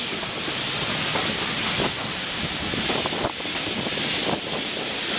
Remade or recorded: recorded